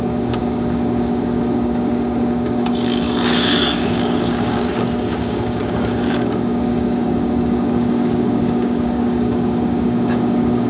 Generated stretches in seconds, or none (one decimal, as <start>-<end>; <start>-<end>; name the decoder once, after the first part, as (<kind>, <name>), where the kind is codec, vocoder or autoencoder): 0.0-10.7 (codec, DAC)